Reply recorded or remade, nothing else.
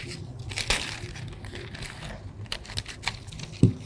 recorded